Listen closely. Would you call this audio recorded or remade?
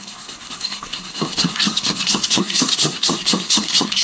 remade